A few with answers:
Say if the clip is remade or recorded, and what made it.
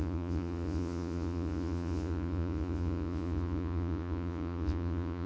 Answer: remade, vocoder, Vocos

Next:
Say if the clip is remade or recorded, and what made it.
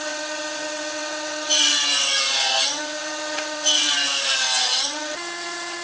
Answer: remade, vocoder, WaveNeXt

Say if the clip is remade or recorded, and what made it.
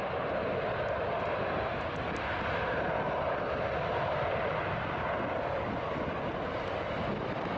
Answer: recorded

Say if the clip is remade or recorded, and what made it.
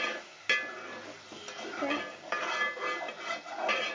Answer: recorded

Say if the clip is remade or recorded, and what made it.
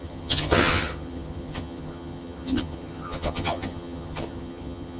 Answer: remade, vocoder, HiFi-GAN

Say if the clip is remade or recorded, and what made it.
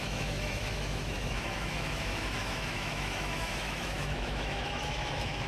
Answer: remade, autoencoder, DAC-VAE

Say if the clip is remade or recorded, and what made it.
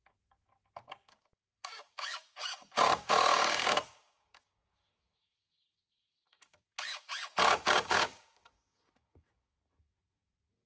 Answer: remade, codec, DAC